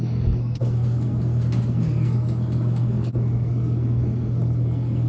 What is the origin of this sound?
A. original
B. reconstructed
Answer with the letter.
B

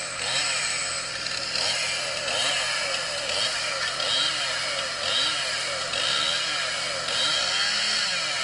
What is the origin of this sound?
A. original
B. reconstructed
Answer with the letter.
A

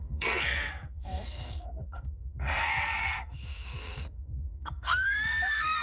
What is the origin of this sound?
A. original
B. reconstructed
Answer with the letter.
B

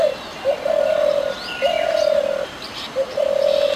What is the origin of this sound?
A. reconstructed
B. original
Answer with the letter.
B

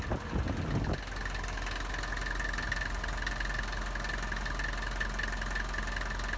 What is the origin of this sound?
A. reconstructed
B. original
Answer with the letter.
B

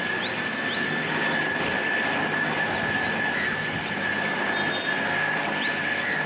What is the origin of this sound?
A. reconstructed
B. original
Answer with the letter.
B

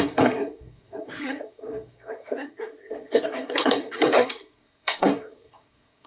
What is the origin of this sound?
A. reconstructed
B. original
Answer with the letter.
A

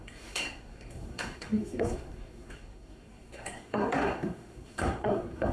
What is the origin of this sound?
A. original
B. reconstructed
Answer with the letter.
B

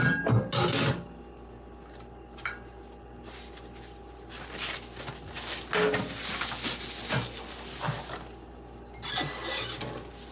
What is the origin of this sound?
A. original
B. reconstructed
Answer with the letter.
A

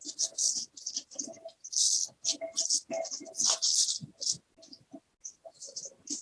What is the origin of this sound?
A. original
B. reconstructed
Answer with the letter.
A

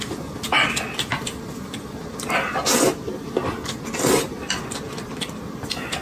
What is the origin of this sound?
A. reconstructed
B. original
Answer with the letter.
B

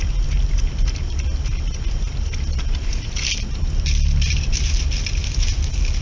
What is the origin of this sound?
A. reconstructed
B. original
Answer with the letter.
B